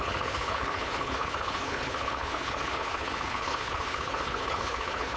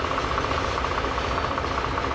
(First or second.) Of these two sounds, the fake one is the first